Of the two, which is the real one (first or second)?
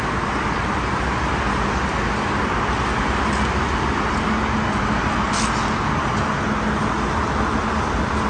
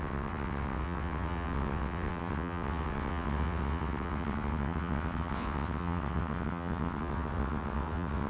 first